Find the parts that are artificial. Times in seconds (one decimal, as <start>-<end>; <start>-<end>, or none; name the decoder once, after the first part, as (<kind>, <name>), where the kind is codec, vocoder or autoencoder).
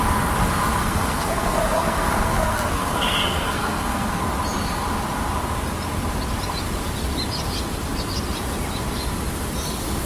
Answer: 0.8-4.2 (codec, SNAC)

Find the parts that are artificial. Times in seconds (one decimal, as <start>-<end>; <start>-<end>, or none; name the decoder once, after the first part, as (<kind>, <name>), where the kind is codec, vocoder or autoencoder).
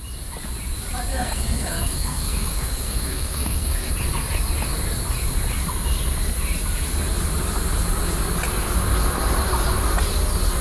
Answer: 1.1-3.9 (codec, SNAC)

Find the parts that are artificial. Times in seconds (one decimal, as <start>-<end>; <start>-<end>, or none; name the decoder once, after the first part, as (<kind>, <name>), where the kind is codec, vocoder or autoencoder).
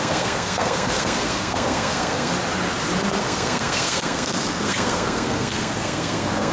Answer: 0.0-2.3 (codec, SNAC); 3.2-6.5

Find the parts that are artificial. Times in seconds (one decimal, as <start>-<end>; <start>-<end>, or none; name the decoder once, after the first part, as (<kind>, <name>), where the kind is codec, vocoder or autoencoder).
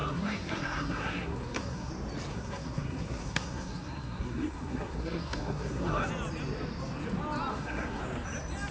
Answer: 0.0-1.9 (codec, SNAC); 2.3-6.1; 7.5-8.0